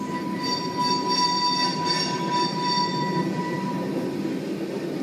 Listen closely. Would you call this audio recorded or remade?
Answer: recorded